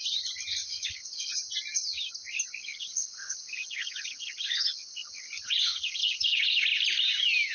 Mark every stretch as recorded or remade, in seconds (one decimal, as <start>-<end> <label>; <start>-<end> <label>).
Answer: 0.0-0.6 recorded; 0.6-1.3 remade; 1.3-2.6 recorded; 2.6-6.6 remade; 6.6-7.5 recorded